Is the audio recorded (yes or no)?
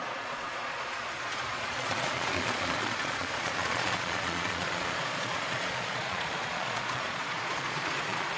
no